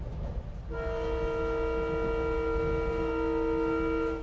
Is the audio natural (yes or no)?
yes